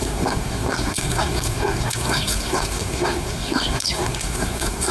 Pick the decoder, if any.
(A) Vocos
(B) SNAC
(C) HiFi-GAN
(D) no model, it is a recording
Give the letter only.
B